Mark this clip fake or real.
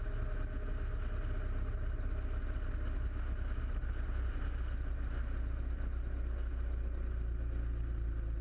real